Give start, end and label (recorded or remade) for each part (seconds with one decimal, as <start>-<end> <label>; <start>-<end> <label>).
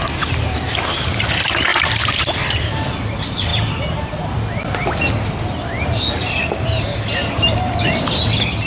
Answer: 0.0-1.7 recorded; 1.7-2.2 remade; 2.2-8.7 recorded